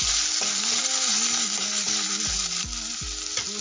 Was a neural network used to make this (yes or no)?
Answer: no